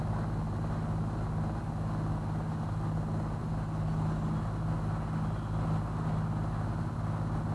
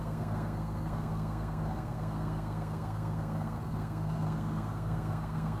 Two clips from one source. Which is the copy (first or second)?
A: second